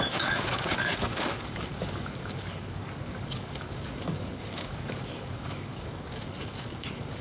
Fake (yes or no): yes